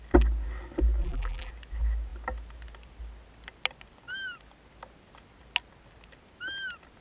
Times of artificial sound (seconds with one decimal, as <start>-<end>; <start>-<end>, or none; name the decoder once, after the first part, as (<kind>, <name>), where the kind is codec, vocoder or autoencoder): 1.0-1.5 (vocoder, BigVGAN v2)